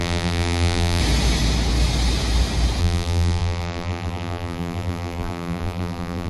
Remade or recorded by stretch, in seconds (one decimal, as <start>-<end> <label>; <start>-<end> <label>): 0.0-1.0 remade; 1.0-2.8 recorded; 2.8-6.3 remade